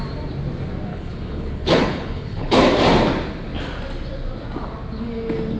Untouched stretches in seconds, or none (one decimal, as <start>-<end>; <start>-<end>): 0.0-0.9; 2.6-5.6